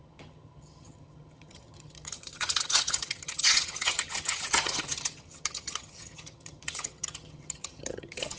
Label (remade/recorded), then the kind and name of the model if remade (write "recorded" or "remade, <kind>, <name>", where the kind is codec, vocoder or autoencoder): remade, vocoder, HiFi-GAN